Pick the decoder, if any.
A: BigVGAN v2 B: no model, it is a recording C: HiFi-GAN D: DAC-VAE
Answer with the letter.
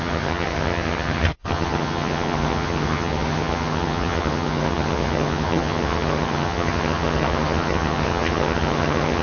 C